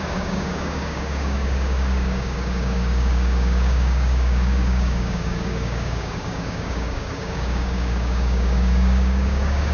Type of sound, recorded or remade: remade